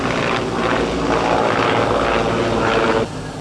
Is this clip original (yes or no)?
yes